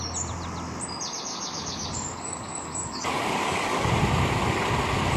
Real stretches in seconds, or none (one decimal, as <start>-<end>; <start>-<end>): 0.0-1.3; 4.0-5.2